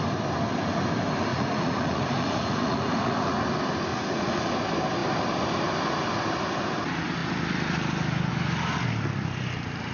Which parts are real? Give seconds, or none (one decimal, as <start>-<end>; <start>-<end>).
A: 0.0-1.3; 3.4-3.9; 4.5-9.9